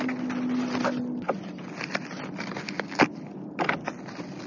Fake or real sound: real